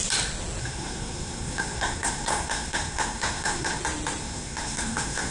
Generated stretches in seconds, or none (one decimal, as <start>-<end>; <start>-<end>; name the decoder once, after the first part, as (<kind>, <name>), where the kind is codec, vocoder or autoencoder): 0.6-3.8 (codec, SNAC); 4.2-5.3